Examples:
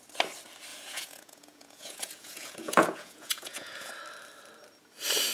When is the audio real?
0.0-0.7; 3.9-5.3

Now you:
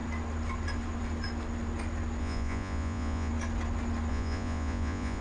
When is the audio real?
0.0-2.2; 3.3-4.1

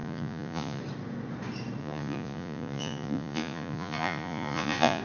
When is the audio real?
0.8-1.8